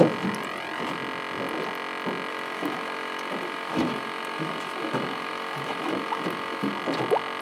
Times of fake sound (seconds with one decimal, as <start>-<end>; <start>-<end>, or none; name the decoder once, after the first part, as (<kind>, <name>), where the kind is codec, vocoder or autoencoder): 2.3-6.7 (autoencoder, DAC-VAE)